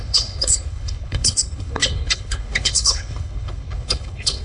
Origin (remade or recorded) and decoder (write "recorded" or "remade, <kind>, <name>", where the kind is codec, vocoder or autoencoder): remade, codec, HILCodec